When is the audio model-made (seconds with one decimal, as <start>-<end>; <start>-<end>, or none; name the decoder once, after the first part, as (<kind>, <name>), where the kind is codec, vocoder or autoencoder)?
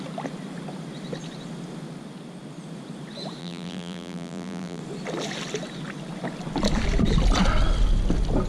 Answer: 3.4-4.8 (vocoder, BigVGAN v2)